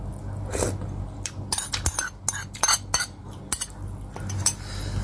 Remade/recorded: recorded